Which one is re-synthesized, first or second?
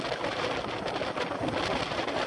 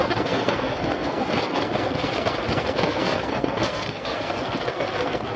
second